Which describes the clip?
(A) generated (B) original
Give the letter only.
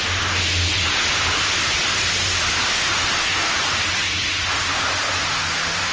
B